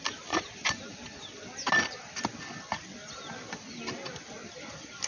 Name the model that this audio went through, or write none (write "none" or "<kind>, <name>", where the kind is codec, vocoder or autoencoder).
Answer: none